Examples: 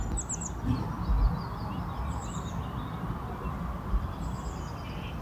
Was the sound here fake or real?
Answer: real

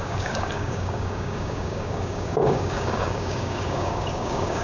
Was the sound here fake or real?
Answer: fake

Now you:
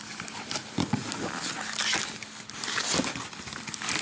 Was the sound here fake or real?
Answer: fake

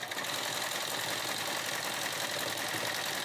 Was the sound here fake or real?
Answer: real